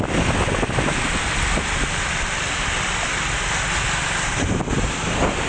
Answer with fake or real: real